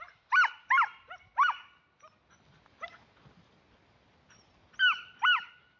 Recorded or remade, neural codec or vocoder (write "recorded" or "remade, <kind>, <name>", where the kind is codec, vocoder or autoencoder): recorded